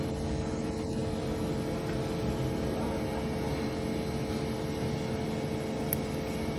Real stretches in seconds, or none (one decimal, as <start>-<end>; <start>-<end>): 0.0-6.6

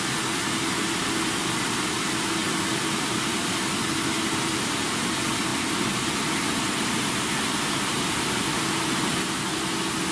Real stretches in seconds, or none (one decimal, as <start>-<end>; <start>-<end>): 0.0-10.1

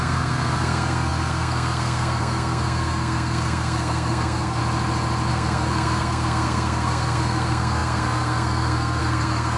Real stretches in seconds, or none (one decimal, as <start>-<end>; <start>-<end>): 4.6-5.3

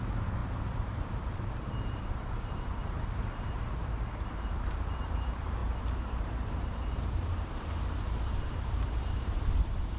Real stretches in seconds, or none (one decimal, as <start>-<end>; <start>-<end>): none